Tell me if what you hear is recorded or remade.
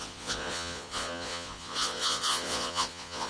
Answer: remade